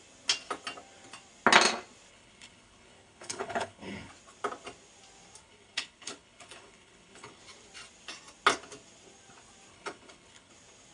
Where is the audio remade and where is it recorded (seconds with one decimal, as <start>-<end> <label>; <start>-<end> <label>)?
0.0-2.1 recorded; 2.1-4.1 remade; 4.1-5.4 recorded; 5.4-7.4 remade; 7.4-9.7 recorded; 9.7-10.5 remade; 10.5-10.9 recorded